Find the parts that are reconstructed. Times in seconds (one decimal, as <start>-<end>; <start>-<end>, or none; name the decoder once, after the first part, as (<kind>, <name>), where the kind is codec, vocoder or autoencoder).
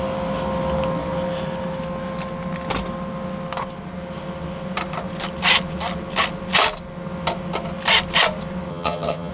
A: 8.7-9.3 (vocoder, HiFi-GAN)